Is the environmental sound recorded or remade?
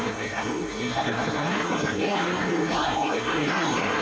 remade